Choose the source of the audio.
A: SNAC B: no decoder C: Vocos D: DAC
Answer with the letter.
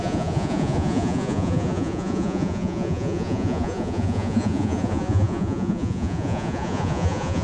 C